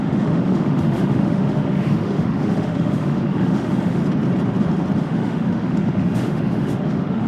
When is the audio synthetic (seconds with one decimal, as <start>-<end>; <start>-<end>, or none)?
0.0-4.0; 5.0-7.3

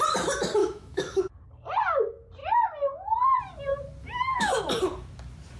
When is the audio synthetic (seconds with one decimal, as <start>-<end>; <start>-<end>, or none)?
0.6-1.2; 4.0-4.6